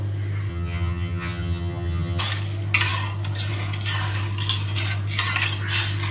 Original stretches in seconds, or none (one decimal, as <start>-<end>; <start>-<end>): 0.0-0.5; 2.2-6.1